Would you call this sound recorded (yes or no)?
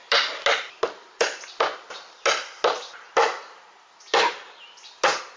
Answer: yes